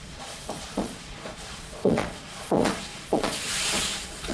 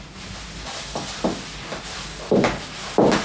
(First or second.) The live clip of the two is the second